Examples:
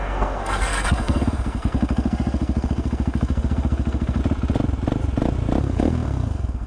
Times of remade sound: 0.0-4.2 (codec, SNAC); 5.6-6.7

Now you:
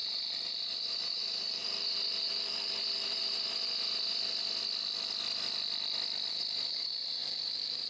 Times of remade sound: 0.0-1.6 (vocoder, BigVGAN v2); 6.3-7.9

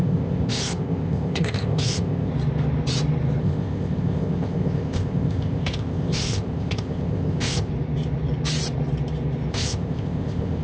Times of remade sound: 0.0-2.3 (codec, ZipCodec); 3.4-7.7; 9.5-10.6